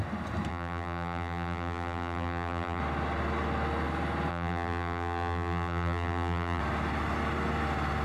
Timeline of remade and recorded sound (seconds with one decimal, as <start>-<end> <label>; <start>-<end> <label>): 0.0-0.5 recorded; 0.5-2.8 remade; 2.8-4.3 recorded; 4.3-6.6 remade; 6.6-8.0 recorded